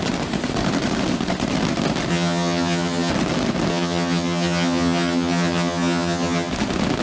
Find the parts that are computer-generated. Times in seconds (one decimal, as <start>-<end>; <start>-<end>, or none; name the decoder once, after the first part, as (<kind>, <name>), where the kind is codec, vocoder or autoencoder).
2.1-3.1 (vocoder, HiFi-GAN); 3.7-6.5